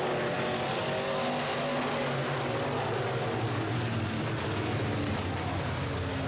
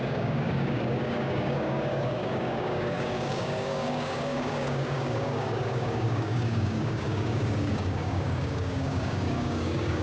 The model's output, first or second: second